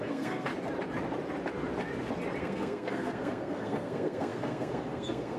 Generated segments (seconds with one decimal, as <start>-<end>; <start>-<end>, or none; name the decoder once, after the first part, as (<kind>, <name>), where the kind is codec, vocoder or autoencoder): 0.0-0.5 (codec, SNAC); 2.4-5.4